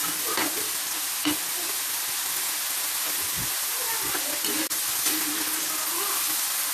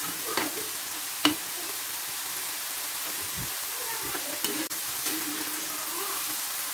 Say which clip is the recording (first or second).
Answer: first